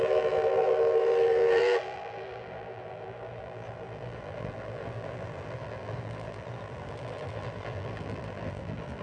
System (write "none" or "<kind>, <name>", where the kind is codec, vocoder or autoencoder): vocoder, BigVGAN v2